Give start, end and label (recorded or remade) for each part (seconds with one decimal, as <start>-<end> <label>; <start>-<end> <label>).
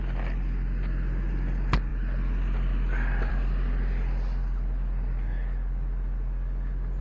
0.0-7.0 recorded